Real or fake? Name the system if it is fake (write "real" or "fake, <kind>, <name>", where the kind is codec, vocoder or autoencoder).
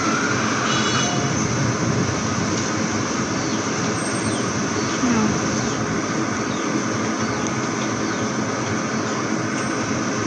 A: real